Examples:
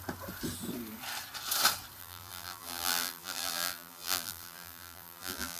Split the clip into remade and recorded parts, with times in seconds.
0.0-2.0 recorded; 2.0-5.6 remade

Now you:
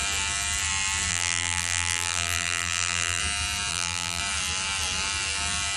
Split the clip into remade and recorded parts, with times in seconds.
0.0-1.1 recorded; 1.1-3.2 remade; 3.2-3.7 recorded; 3.7-4.2 remade; 4.2-5.8 recorded

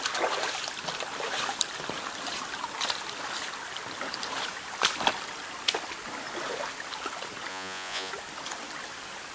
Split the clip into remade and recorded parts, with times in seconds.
0.0-7.5 recorded; 7.5-8.1 remade; 8.1-9.3 recorded